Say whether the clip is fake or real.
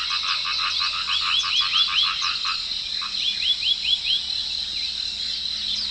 real